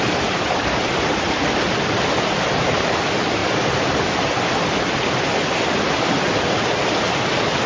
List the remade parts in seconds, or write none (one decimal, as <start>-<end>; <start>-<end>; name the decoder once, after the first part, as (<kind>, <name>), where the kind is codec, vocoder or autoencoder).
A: none